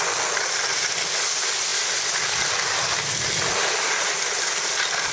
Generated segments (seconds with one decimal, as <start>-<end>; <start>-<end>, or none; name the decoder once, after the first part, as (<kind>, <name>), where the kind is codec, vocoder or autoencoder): none